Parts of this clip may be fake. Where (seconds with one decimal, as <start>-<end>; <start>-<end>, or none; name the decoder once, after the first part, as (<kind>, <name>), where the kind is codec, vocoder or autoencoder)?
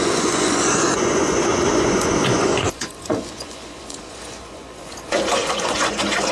0.0-6.3 (vocoder, Vocos)